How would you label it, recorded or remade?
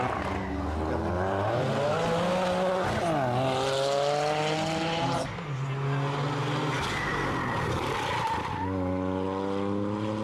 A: recorded